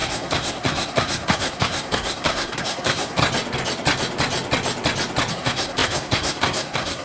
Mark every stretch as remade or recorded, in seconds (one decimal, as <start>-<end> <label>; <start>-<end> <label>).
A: 0.0-3.2 remade; 3.2-5.3 recorded; 5.3-7.0 remade